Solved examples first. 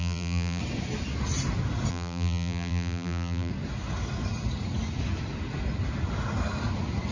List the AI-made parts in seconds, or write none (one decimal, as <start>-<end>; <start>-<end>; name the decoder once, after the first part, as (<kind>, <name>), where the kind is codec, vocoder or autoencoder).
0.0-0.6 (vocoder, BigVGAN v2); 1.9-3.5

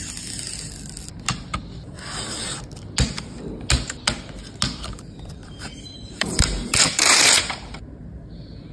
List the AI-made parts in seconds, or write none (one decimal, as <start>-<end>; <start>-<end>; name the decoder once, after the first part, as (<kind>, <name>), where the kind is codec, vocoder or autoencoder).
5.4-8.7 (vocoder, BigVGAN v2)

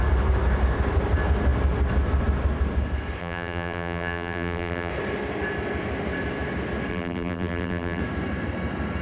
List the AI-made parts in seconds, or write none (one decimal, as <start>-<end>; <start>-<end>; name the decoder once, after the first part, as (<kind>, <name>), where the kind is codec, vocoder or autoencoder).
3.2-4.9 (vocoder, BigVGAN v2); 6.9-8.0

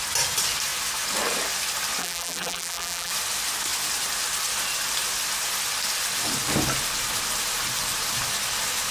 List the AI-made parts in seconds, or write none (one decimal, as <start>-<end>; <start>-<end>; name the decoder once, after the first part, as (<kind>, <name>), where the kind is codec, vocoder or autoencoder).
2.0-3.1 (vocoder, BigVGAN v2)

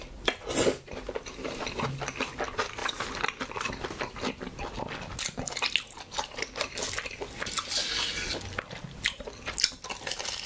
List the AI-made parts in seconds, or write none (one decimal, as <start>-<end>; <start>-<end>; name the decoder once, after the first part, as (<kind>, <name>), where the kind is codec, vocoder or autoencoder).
2.8-4.4 (vocoder, BigVGAN v2)